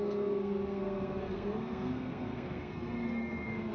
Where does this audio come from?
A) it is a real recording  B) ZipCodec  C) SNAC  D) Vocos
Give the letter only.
C